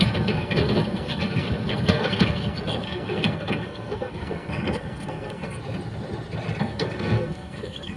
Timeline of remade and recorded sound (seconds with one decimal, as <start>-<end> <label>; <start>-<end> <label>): 0.0-5.6 remade; 5.6-6.6 recorded; 6.6-8.0 remade